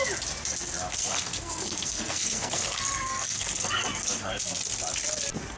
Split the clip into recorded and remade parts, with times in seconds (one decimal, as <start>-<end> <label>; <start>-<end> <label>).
0.0-0.9 recorded; 0.9-4.3 remade; 4.3-5.6 recorded